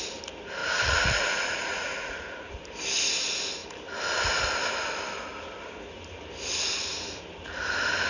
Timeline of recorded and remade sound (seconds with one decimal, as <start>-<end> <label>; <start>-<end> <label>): 0.0-0.6 recorded; 0.6-2.5 remade; 2.5-8.1 recorded